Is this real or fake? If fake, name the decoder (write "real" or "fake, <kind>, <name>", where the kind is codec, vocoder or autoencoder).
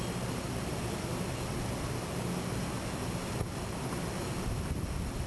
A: real